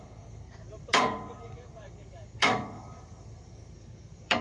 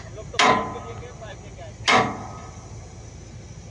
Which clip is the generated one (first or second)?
first